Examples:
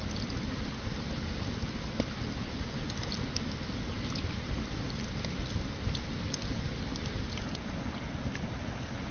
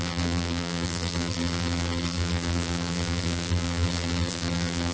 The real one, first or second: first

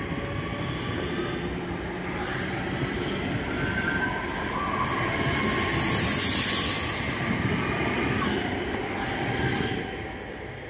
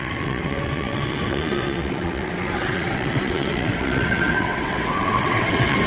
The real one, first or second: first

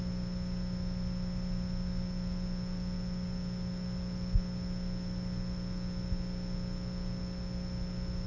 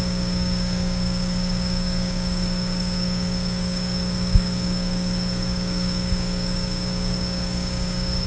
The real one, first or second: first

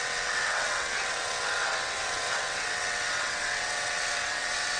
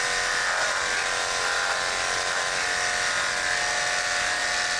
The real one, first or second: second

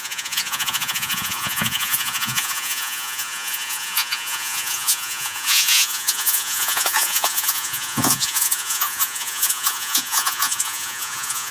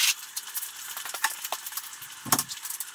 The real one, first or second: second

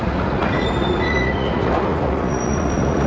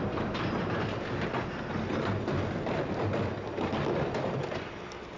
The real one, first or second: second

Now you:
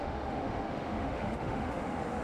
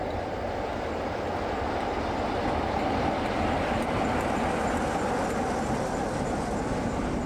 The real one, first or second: second